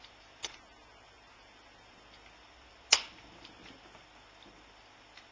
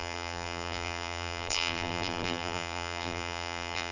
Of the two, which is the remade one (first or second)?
second